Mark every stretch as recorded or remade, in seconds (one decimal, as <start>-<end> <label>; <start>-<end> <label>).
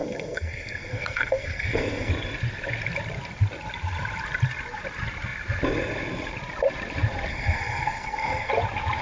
0.0-2.1 remade; 2.1-7.3 recorded; 7.3-8.5 remade; 8.5-9.0 recorded